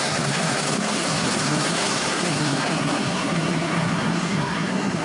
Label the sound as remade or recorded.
remade